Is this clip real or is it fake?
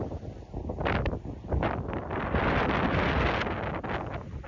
real